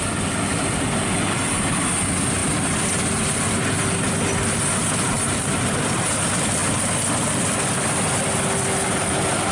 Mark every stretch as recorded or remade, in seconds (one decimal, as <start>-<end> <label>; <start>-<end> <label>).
0.0-9.5 recorded